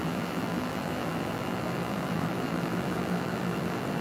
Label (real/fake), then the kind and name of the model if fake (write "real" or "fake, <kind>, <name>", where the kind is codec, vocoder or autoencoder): fake, vocoder, BigVGAN v2